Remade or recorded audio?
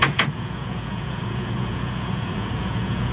remade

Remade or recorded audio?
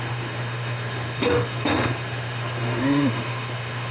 remade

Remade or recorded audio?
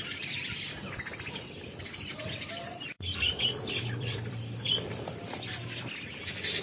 remade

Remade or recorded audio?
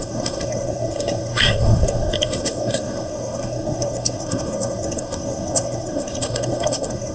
remade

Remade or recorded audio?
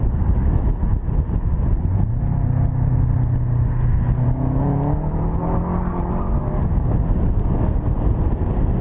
recorded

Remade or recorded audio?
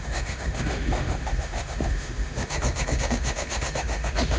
remade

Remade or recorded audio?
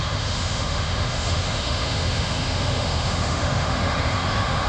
remade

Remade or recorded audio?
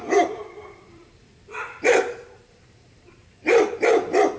remade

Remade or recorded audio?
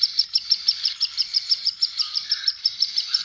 remade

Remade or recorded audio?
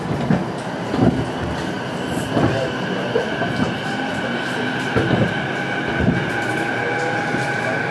recorded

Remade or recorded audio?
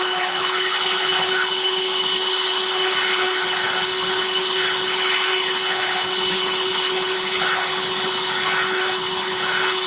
remade